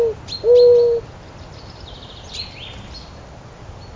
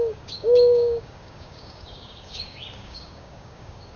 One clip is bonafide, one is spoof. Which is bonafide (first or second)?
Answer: first